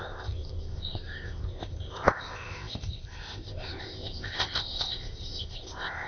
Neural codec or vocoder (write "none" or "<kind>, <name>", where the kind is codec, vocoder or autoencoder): codec, ZipCodec